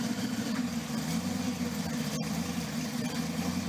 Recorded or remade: remade